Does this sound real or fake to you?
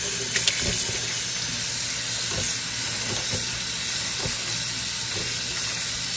real